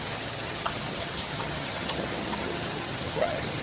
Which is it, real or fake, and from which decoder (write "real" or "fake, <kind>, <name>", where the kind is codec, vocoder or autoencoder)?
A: fake, vocoder, HiFi-GAN